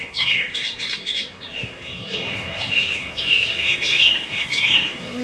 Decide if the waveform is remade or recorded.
remade